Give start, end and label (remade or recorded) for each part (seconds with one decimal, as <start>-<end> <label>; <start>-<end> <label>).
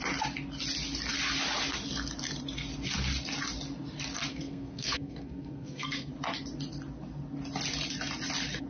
0.0-4.3 recorded; 4.3-6.1 remade; 6.1-8.7 recorded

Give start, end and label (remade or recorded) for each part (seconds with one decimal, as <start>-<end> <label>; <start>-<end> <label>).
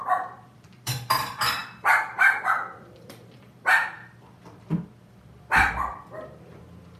0.0-7.0 remade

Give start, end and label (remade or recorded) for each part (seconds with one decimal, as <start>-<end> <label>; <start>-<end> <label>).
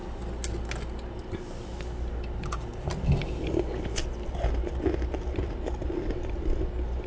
0.0-7.1 recorded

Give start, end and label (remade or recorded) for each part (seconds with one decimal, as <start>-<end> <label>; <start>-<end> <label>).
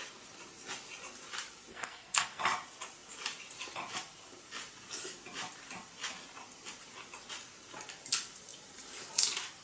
0.0-1.7 recorded; 1.7-2.4 remade; 2.4-9.6 recorded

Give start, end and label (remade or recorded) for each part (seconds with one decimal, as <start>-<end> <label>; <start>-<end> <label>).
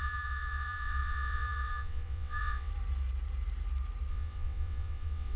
0.0-2.7 remade; 2.7-4.1 recorded; 4.1-5.4 remade